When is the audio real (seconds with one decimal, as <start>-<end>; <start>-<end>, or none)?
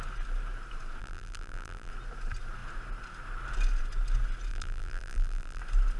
0.0-1.0; 1.9-4.5; 5.6-6.0